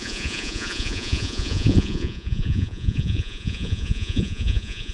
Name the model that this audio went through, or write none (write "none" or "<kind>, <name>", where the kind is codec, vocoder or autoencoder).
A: vocoder, Vocos